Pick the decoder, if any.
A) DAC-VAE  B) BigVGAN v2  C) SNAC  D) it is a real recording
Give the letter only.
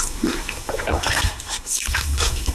C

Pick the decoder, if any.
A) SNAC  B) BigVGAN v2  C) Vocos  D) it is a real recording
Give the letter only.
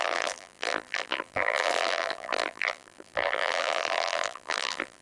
B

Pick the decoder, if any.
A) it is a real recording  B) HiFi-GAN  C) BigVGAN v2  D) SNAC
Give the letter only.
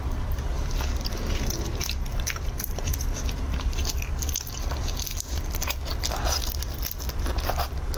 A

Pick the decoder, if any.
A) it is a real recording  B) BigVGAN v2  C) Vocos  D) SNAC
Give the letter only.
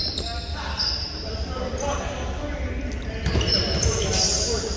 A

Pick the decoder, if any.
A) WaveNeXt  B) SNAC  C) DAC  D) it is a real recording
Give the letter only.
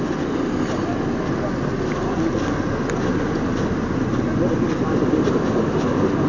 D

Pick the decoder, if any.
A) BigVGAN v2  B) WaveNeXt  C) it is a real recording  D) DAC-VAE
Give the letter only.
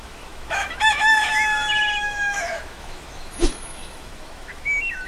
D